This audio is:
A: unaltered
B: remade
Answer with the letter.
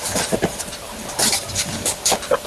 B